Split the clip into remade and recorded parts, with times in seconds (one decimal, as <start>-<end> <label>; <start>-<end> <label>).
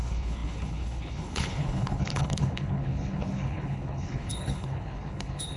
0.0-5.6 remade